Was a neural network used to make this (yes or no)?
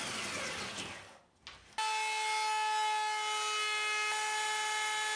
no